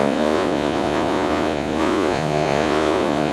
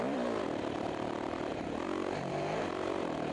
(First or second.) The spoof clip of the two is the first